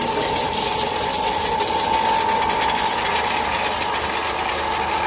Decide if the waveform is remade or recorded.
recorded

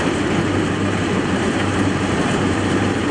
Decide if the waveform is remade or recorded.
remade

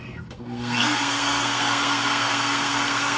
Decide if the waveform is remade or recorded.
remade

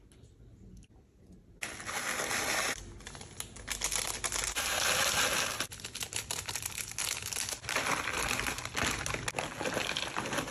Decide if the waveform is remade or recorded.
recorded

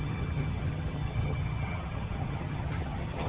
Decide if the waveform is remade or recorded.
remade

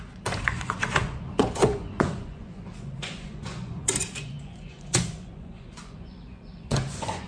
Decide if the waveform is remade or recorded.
remade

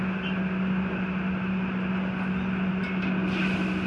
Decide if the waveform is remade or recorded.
recorded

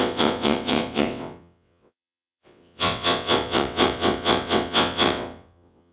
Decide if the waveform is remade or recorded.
remade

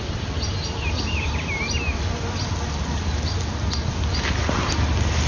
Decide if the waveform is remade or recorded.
recorded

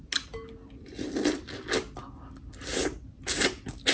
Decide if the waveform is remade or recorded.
recorded